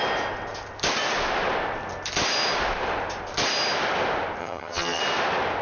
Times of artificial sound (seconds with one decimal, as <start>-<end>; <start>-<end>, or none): 4.4-5.0